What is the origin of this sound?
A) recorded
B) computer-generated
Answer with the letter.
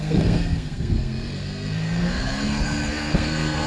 B